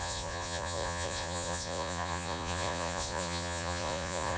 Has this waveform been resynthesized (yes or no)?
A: yes